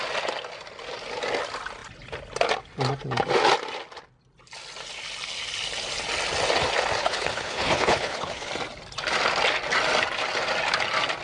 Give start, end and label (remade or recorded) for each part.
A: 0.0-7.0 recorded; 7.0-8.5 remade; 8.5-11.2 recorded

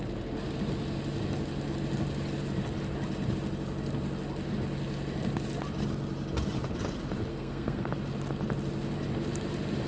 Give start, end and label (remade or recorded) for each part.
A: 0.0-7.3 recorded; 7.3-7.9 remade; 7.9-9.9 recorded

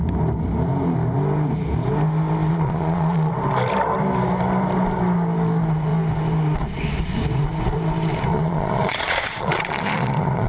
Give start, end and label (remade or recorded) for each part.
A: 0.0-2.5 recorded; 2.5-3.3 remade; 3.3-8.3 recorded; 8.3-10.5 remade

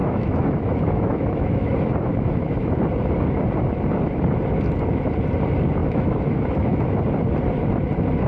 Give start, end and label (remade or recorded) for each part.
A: 0.0-1.7 remade; 1.7-2.1 recorded; 2.1-2.8 remade; 2.8-5.8 recorded; 5.8-7.0 remade; 7.0-8.3 recorded

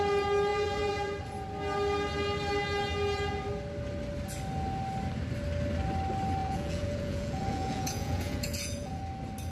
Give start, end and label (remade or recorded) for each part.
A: 0.0-0.5 recorded; 0.5-1.2 remade; 1.2-6.4 recorded; 6.4-9.0 remade; 9.0-9.5 recorded